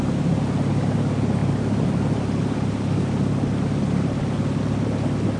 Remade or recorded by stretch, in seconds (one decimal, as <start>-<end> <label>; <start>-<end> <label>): 0.0-5.4 recorded